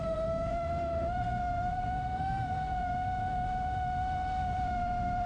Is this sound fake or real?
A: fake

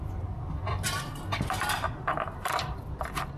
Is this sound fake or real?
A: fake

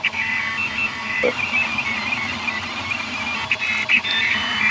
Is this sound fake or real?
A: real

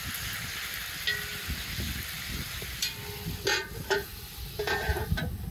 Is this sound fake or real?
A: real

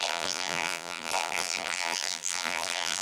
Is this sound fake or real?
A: fake